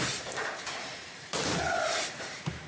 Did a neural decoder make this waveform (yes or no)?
yes